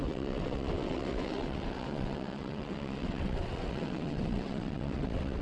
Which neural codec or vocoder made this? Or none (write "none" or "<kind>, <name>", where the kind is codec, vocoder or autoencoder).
vocoder, WaveNeXt